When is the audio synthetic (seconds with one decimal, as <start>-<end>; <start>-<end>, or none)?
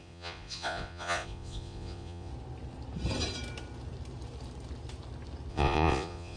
0.0-2.3; 5.5-6.4